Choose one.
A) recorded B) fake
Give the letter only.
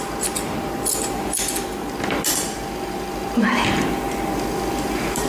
A